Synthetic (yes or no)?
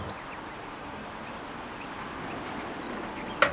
no